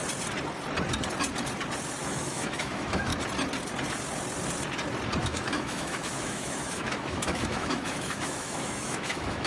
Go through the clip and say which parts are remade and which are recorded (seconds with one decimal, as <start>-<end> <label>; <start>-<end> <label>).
0.0-2.0 recorded; 2.0-3.1 remade; 3.1-5.2 recorded; 5.2-9.5 remade